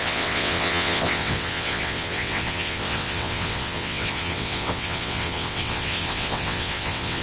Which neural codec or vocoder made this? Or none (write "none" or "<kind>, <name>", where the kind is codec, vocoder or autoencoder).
vocoder, WaveNeXt